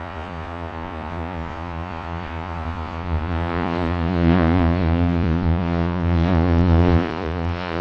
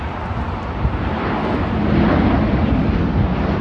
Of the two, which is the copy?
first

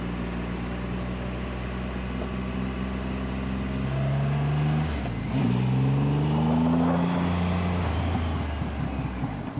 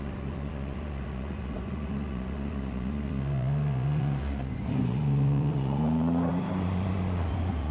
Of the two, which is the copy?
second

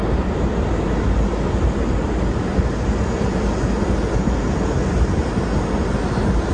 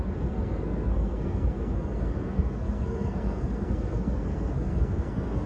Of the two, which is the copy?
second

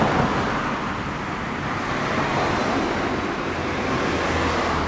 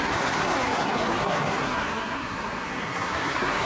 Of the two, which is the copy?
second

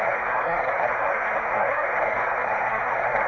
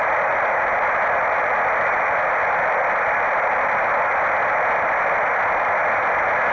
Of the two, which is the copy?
first